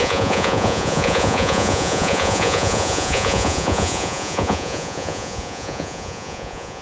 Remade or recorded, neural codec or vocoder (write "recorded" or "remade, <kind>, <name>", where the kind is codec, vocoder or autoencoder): remade, vocoder, Vocos